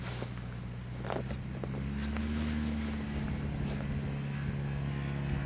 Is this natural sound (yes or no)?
yes